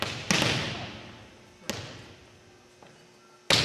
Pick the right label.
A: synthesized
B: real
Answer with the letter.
B